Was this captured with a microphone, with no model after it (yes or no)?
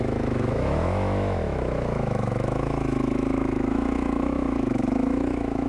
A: no